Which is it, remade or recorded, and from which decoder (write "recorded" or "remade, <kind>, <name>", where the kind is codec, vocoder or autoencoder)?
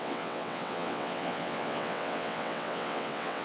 remade, vocoder, WaveNeXt